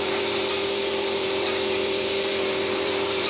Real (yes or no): no